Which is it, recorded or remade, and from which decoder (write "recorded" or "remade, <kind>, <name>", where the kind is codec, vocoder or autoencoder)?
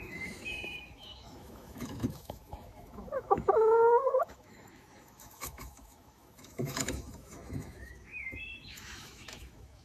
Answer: remade, autoencoder, DAC-VAE